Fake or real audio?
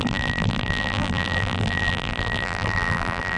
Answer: fake